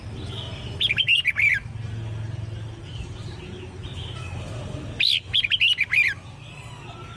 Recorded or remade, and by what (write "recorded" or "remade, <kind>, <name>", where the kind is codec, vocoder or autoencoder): recorded